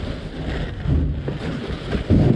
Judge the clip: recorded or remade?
recorded